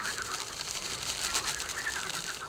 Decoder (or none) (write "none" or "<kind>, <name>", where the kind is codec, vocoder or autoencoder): none